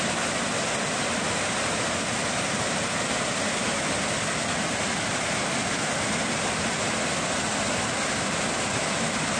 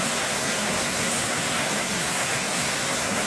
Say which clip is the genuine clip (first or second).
first